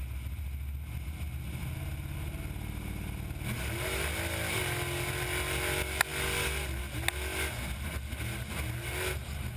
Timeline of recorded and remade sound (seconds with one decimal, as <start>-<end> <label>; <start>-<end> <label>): 0.0-9.6 recorded